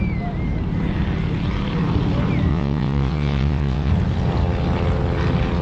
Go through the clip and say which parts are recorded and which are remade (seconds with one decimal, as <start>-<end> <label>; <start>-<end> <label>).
0.0-2.5 recorded; 2.5-3.9 remade; 3.9-5.6 recorded